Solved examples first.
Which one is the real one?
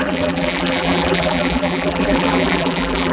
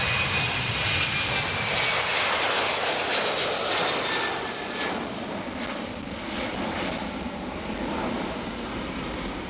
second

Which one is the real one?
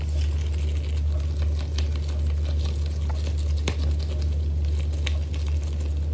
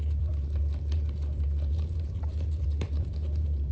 first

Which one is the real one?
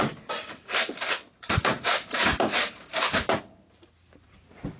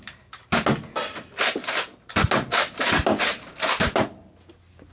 second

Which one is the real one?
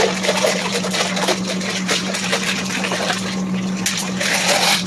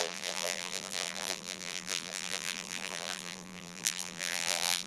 first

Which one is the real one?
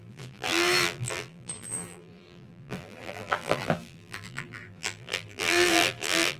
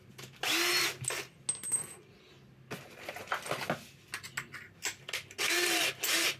second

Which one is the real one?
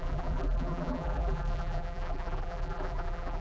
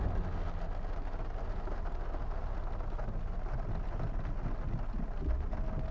second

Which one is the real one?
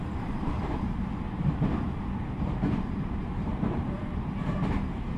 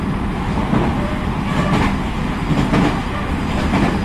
second